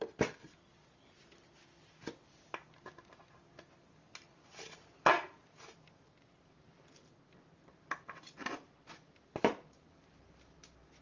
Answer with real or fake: real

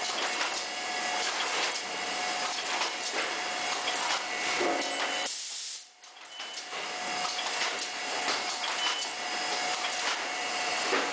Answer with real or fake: real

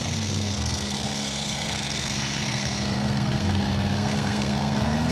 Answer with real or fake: fake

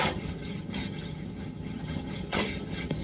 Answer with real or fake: fake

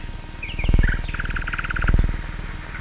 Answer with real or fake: real